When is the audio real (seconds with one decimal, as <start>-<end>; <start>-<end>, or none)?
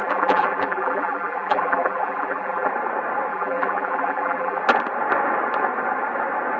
2.7-3.3; 4.6-6.6